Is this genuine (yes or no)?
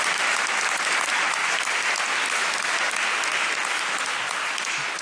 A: yes